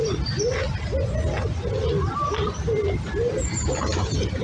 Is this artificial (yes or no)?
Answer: no